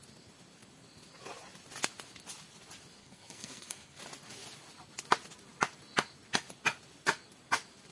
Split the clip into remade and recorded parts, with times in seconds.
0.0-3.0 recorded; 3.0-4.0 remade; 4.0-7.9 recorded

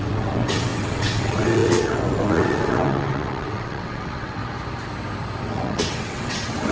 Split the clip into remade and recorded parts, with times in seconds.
0.0-4.4 remade; 4.4-5.4 recorded; 5.4-6.7 remade

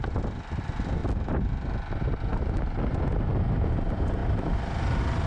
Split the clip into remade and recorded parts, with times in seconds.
0.0-5.3 recorded

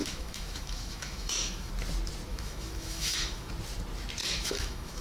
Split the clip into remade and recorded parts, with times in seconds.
0.0-1.7 remade; 1.7-2.3 recorded; 2.3-3.5 remade; 3.5-4.2 recorded; 4.2-5.0 remade